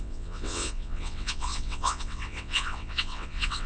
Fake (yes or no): yes